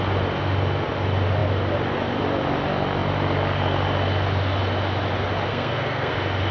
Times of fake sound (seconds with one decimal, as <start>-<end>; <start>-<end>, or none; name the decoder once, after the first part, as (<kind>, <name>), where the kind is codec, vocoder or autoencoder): 5.5-6.1 (codec, SNAC)